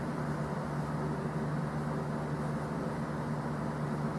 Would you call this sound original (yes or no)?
yes